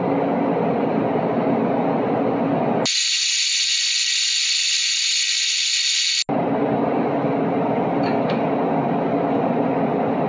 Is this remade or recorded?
recorded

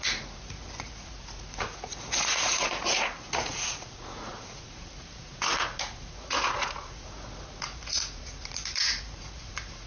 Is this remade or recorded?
remade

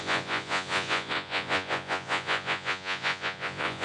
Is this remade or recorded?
remade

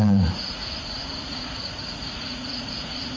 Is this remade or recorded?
remade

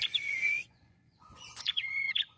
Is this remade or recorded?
remade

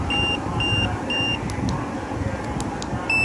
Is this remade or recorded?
recorded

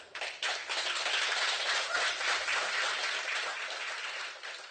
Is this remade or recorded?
recorded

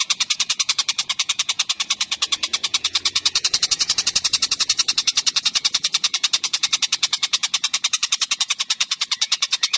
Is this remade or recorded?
remade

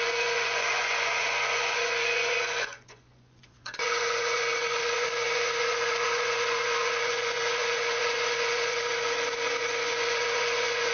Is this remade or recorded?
remade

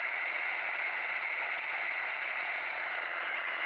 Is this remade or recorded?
remade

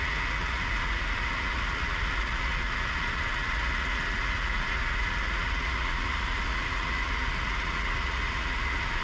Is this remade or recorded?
remade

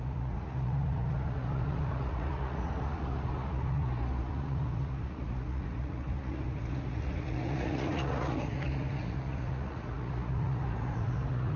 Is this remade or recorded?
remade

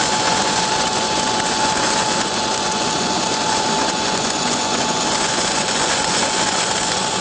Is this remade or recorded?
remade